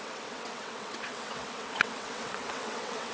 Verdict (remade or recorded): remade